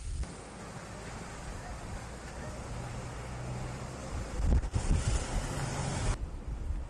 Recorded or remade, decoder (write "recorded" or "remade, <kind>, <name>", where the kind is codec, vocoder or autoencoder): recorded